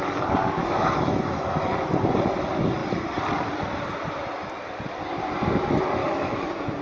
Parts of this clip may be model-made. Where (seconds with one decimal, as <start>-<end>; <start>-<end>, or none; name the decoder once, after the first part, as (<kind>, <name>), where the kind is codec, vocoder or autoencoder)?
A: 0.6-1.7 (autoencoder, DAC-VAE); 6.0-6.8